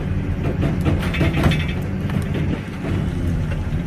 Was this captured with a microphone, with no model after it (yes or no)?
yes